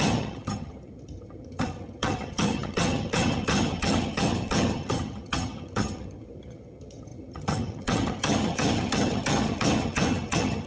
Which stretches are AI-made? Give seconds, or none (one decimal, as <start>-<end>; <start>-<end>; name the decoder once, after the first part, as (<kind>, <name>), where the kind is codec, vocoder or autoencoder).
0.0-10.7 (vocoder, HiFi-GAN)